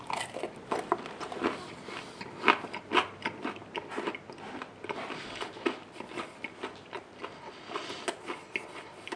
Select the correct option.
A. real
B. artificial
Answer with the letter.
A